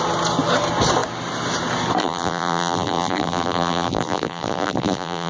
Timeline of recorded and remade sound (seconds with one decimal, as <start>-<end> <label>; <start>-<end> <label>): 0.0-2.0 recorded; 2.0-5.3 remade